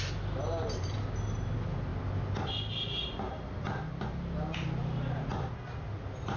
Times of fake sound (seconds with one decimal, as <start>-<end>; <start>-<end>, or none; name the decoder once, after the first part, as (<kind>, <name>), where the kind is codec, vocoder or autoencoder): none